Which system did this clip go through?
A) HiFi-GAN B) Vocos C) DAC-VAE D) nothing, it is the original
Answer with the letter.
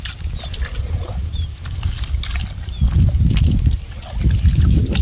D